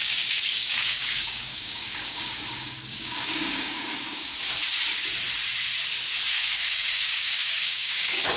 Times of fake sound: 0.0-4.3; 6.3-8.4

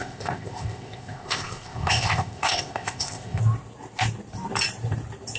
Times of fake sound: 0.0-3.4